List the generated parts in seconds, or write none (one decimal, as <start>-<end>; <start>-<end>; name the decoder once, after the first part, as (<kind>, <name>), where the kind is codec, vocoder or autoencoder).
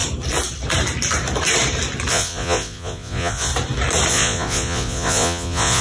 2.1-3.5 (vocoder, Vocos); 4.1-5.8